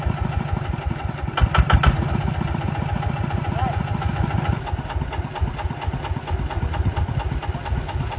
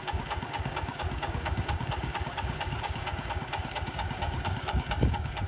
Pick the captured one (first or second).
first